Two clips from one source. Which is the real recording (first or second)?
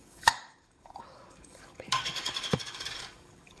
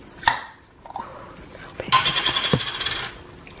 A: second